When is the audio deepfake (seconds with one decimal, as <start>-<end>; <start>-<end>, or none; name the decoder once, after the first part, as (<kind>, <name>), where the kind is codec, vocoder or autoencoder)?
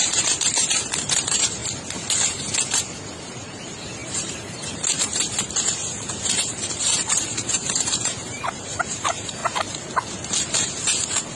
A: 0.0-1.6 (vocoder, BigVGAN v2); 2.3-9.4; 10.4-11.4